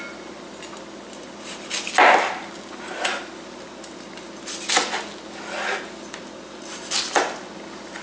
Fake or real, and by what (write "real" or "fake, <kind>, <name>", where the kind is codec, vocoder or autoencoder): real